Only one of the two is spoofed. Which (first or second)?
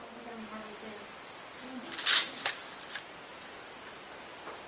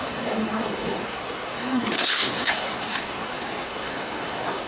second